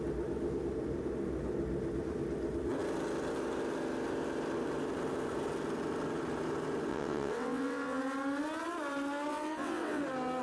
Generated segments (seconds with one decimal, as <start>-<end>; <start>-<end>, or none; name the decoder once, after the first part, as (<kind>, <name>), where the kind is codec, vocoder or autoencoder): 6.9-8.0 (vocoder, WaveNeXt); 9.3-10.0